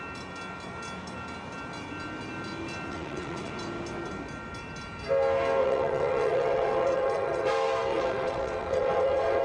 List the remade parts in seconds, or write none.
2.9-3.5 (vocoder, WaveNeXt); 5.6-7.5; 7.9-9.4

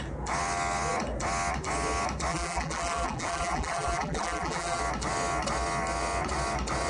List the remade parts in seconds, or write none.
2.3-4.8 (vocoder, BigVGAN v2)